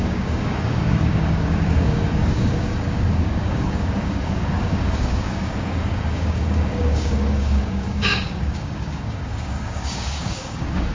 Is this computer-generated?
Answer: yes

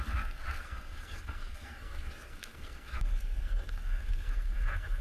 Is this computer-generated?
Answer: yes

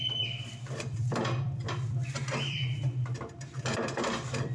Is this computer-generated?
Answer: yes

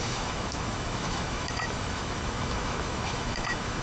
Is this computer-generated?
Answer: yes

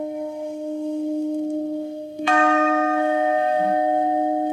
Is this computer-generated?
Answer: yes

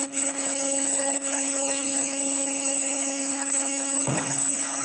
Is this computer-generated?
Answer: yes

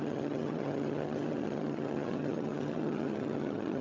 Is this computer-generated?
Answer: yes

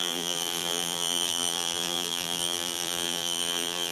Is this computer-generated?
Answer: yes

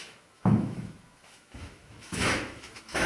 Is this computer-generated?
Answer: yes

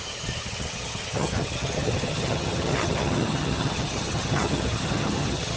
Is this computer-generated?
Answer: yes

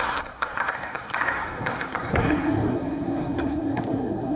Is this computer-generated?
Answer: yes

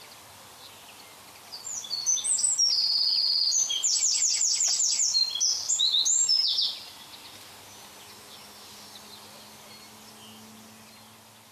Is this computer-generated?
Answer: no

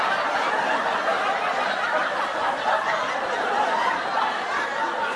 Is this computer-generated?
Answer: no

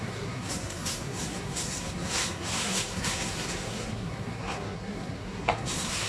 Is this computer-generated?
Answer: yes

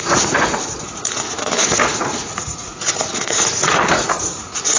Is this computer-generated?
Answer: yes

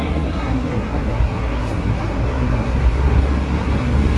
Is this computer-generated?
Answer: yes